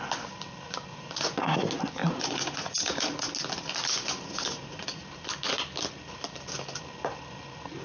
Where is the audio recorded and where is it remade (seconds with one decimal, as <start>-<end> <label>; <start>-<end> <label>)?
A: 0.0-0.9 recorded; 0.9-1.5 remade; 1.5-2.0 recorded; 2.0-3.3 remade; 3.3-4.5 recorded; 4.5-5.0 remade; 5.0-7.8 recorded